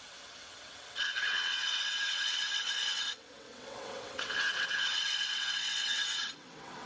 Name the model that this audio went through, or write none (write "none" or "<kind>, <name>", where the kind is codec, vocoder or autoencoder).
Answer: vocoder, WaveNeXt